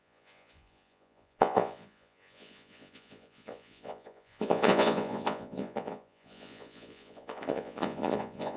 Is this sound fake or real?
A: fake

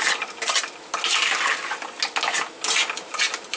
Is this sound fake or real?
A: real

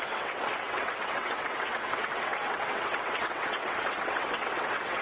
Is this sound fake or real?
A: fake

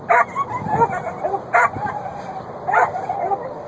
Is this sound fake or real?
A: real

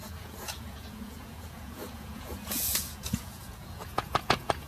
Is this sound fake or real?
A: fake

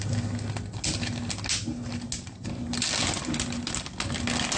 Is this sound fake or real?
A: real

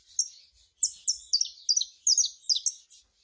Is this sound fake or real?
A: real